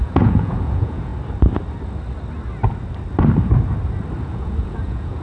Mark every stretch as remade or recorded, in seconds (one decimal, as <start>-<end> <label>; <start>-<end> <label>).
0.0-1.1 remade; 1.1-4.2 recorded; 4.2-5.2 remade